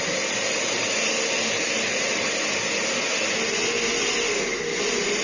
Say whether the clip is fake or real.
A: real